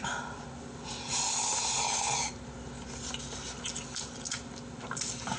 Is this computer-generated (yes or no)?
no